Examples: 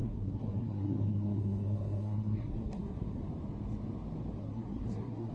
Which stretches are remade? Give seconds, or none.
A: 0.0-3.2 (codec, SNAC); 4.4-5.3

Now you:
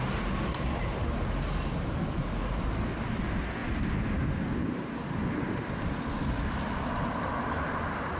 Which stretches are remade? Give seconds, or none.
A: none

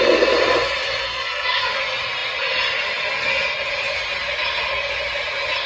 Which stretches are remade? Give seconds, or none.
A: 1.1-1.8 (codec, SNAC)

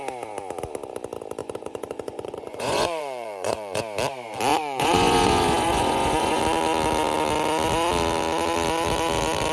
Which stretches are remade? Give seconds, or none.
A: 1.4-3.8 (vocoder, Vocos); 4.5-6.4